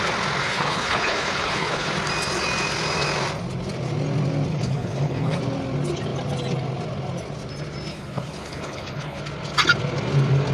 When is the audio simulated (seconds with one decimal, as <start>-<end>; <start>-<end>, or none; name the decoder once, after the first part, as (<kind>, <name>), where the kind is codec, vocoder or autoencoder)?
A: 0.4-1.9 (codec, HILCodec); 4.5-5.4; 7.9-9.2